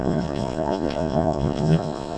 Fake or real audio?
fake